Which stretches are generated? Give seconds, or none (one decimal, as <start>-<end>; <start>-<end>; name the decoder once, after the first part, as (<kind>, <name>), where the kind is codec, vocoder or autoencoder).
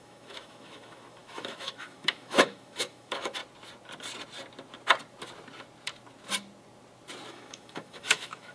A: 0.0-3.4 (autoencoder, DAC-VAE); 7.3-8.5